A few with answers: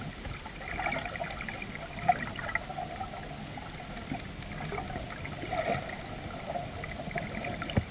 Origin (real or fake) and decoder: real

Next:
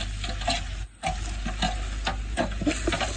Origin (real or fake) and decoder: real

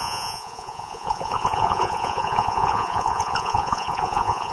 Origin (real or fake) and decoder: fake, vocoder, Vocos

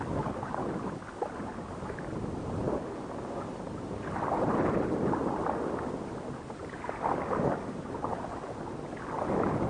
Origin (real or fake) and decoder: real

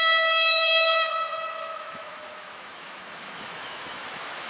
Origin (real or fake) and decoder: fake, autoencoder, DAC-VAE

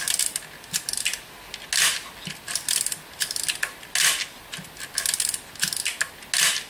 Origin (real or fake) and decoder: real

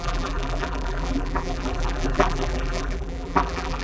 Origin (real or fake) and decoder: fake, vocoder, BigVGAN v2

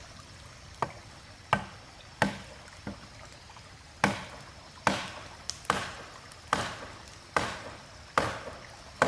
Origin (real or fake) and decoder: real